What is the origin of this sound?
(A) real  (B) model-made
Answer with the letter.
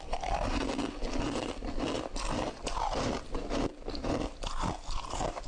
A